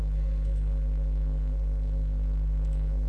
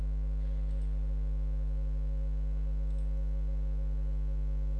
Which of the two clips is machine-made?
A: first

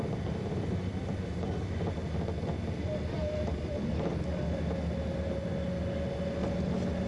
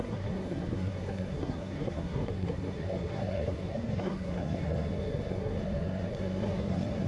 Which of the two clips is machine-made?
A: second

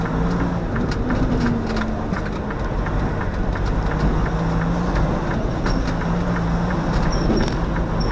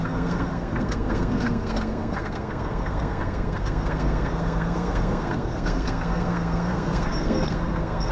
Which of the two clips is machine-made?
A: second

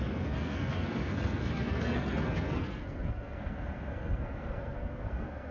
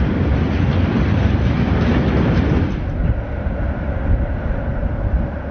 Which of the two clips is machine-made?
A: first